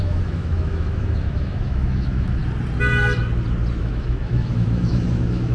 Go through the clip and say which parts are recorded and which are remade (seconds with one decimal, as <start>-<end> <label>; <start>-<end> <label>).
0.0-2.4 remade; 2.4-3.8 recorded; 3.8-5.5 remade